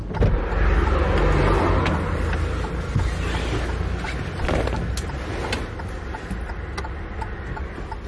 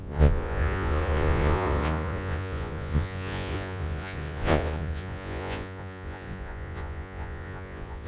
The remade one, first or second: second